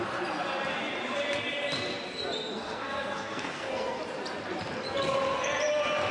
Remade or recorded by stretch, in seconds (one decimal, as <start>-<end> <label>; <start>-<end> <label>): 0.0-2.5 recorded; 2.5-4.0 remade; 4.0-6.1 recorded